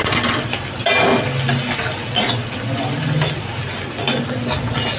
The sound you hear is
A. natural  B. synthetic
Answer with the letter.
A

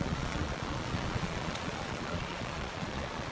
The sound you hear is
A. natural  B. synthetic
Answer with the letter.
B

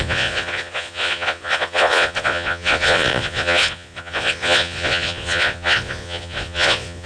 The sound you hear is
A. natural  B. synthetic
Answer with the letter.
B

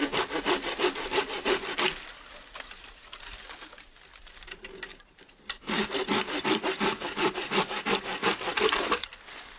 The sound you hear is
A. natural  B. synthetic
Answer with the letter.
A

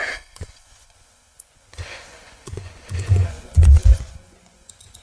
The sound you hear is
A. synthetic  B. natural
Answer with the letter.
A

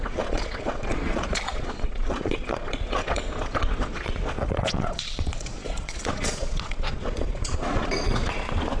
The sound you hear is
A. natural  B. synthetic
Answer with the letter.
B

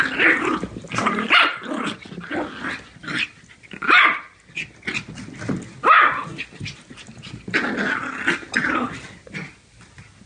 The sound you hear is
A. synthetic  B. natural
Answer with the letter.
B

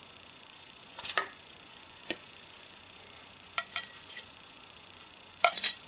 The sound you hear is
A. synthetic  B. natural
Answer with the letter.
A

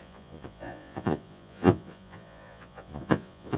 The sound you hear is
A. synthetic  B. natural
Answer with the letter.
A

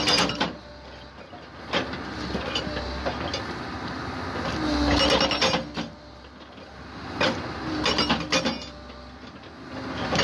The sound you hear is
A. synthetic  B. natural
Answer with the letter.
B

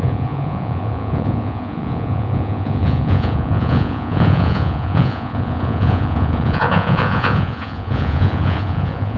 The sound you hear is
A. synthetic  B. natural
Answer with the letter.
A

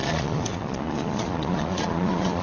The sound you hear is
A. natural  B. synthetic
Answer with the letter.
B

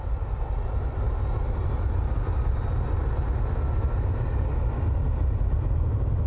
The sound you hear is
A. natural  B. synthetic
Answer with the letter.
A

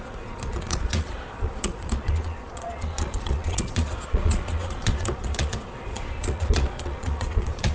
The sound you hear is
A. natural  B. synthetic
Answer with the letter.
B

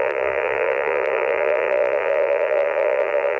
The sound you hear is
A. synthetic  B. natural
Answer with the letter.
A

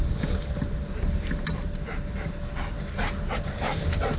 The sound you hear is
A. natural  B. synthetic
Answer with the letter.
A